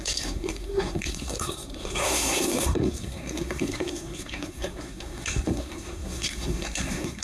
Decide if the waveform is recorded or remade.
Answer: remade